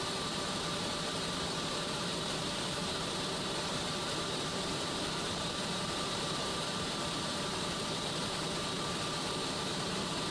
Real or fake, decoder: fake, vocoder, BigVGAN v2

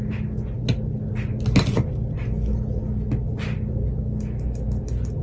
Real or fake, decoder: real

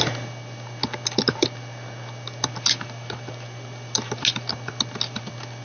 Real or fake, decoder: real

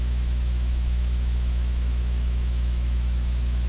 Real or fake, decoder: fake, autoencoder, DAC-VAE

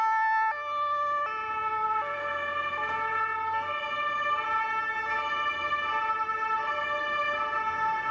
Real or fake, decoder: real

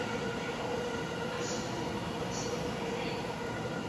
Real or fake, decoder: real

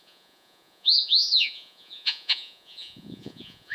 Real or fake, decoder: fake, vocoder, Vocos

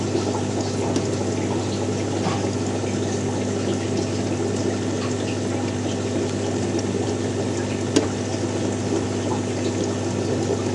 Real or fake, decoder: real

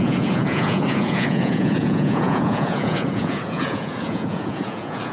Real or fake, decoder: fake, vocoder, Vocos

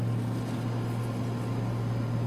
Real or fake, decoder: real